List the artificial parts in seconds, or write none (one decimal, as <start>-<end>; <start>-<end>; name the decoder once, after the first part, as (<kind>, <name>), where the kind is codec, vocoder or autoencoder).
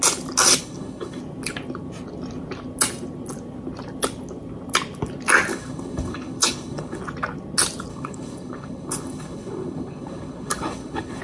0.6-1.2 (codec, HILCodec); 5.5-7.0; 7.9-11.2